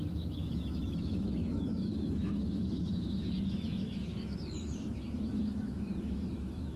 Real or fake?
fake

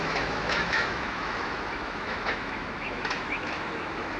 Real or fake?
fake